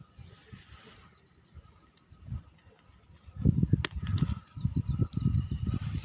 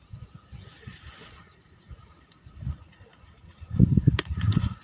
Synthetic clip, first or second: second